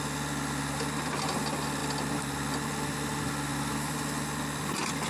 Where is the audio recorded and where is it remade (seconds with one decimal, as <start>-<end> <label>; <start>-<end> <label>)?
0.0-5.1 recorded